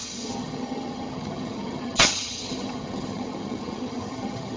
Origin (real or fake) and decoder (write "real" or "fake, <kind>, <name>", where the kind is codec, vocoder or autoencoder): fake, vocoder, HiFi-GAN